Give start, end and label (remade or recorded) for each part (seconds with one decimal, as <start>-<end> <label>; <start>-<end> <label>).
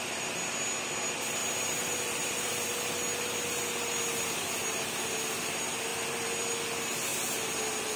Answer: 0.0-1.4 recorded; 1.4-2.5 remade; 2.5-5.9 recorded; 5.9-6.5 remade; 6.5-8.0 recorded